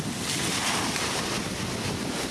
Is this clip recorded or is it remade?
recorded